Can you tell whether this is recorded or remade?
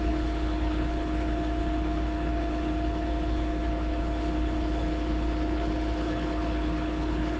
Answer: remade